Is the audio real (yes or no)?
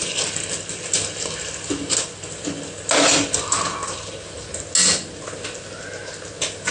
yes